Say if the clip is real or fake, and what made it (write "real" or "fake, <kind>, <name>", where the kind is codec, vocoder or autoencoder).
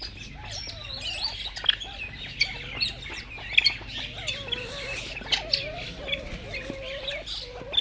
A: real